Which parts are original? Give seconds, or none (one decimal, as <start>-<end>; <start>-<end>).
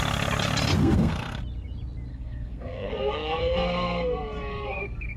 0.0-0.8; 1.4-2.1